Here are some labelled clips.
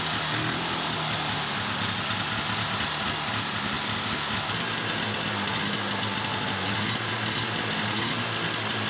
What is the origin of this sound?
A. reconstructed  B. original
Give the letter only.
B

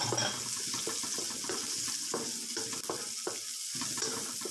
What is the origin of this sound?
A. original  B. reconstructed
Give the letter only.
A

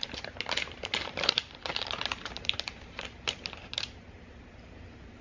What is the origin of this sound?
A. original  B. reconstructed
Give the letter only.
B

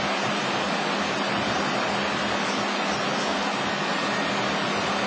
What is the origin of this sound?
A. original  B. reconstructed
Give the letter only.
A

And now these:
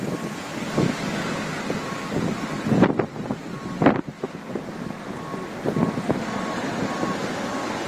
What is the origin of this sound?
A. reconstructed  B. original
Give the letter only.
B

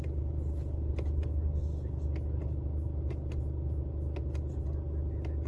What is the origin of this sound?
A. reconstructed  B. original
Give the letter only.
B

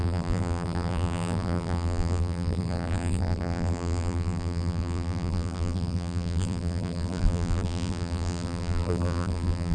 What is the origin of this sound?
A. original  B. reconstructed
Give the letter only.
B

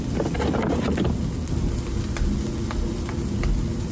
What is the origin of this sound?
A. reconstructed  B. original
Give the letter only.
B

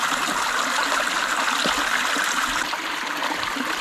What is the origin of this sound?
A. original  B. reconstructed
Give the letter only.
A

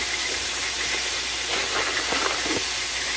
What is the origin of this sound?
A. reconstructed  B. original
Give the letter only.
B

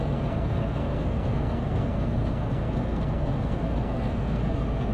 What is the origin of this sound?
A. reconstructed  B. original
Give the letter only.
A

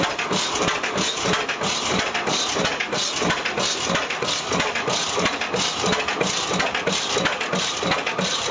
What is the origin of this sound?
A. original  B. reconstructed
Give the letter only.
A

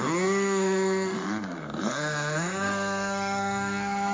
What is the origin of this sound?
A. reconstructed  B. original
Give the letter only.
A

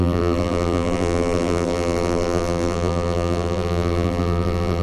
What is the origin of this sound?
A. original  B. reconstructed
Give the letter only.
B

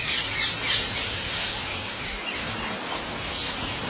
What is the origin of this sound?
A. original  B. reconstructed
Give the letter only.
A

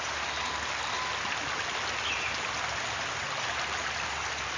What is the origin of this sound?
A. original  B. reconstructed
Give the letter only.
A